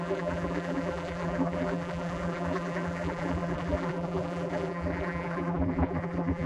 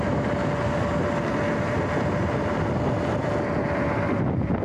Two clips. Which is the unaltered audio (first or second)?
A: second